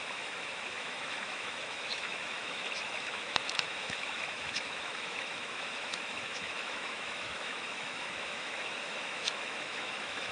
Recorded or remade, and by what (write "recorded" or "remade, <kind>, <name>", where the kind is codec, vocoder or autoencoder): remade, autoencoder, DAC-VAE